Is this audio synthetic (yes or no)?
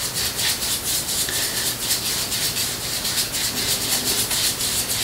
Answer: no